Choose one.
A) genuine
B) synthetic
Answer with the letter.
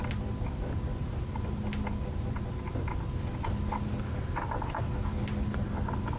A